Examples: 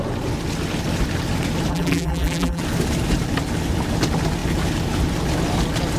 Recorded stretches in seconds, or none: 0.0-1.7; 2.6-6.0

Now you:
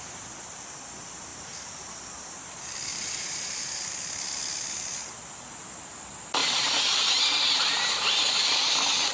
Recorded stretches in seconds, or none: 0.0-1.3; 2.0-2.9; 3.9-6.4; 8.7-9.1

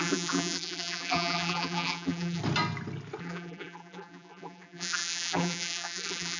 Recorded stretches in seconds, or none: 2.4-3.2